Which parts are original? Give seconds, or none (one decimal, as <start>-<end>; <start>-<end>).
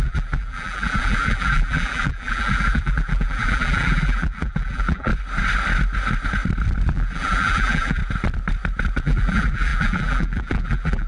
5.1-6.9; 8.0-9.0